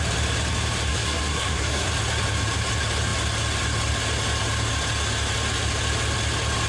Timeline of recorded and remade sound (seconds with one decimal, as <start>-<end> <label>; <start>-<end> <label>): 0.0-0.9 recorded; 0.9-1.9 remade; 1.9-6.7 recorded